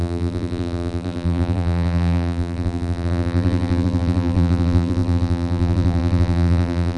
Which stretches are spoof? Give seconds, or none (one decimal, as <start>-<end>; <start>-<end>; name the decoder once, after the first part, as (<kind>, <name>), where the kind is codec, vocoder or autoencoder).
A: 0.0-7.0 (vocoder, BigVGAN v2)